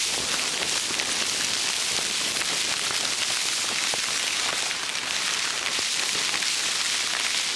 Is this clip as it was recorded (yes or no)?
yes